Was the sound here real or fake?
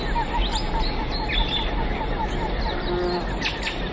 real